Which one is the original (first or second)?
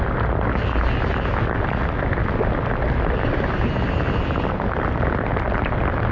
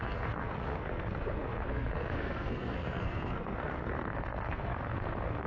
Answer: first